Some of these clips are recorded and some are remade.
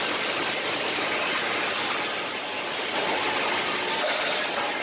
recorded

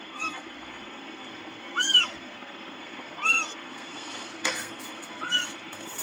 remade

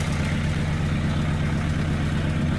recorded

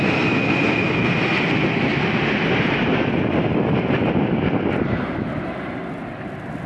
recorded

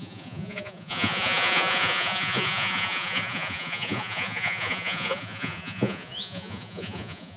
remade